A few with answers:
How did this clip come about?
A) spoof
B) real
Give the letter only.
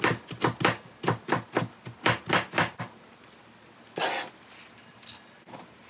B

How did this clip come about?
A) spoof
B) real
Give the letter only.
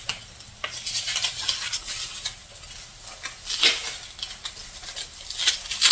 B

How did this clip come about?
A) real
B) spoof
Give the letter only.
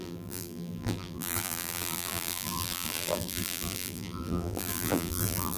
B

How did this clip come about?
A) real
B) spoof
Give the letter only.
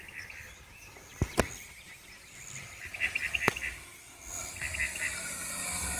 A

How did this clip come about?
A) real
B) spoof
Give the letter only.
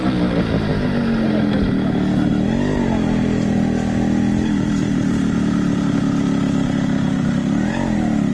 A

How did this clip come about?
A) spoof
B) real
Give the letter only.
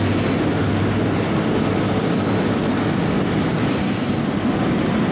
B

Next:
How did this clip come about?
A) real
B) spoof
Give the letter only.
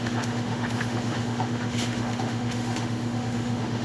B